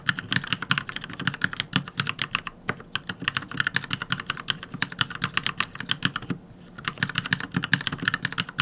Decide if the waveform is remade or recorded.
recorded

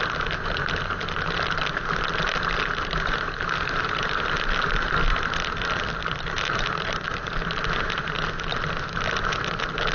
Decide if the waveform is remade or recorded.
recorded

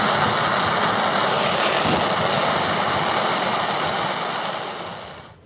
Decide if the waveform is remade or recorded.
recorded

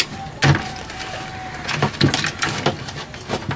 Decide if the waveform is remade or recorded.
recorded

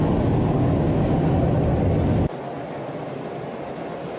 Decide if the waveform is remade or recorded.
recorded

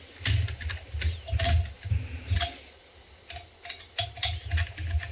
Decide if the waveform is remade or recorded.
recorded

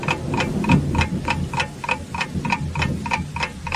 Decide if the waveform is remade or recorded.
recorded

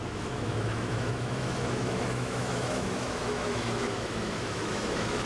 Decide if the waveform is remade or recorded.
remade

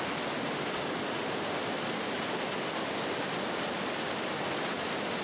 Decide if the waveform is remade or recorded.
recorded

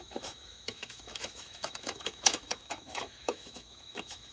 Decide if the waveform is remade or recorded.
remade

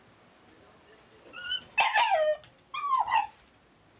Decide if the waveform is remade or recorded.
recorded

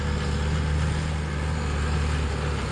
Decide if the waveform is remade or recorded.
recorded